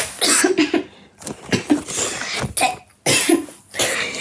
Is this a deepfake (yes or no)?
no